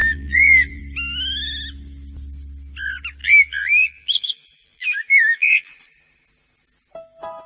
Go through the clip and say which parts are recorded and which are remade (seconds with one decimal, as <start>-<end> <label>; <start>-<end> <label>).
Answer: 0.0-0.8 remade; 0.8-3.2 recorded; 3.2-5.8 remade; 5.8-7.5 recorded